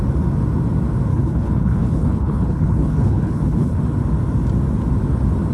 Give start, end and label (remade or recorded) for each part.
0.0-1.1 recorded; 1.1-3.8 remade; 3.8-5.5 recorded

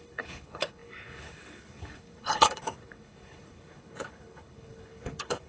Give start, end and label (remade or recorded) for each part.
0.0-5.5 remade

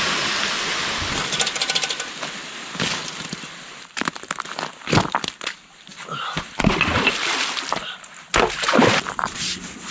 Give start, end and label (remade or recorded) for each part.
0.0-9.9 recorded

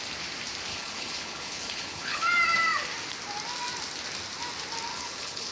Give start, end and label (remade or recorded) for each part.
0.0-0.7 recorded; 0.7-2.2 remade; 2.2-4.9 recorded; 4.9-5.5 remade

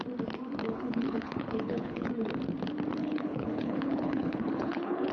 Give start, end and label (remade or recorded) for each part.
0.0-0.6 recorded; 0.6-2.1 remade; 2.1-3.0 recorded; 3.0-5.1 remade